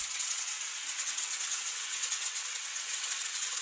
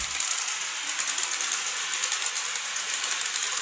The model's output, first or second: first